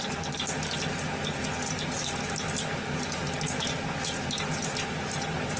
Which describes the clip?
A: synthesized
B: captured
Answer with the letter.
B